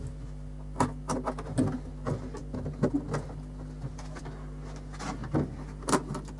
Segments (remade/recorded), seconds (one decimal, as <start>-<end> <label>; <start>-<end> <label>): 0.0-6.4 recorded